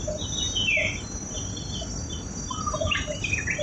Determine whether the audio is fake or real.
real